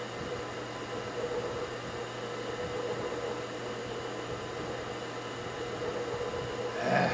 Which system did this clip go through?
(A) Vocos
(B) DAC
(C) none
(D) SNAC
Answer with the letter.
C